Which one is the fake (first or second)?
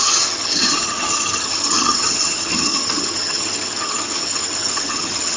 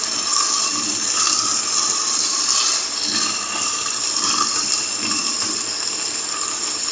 first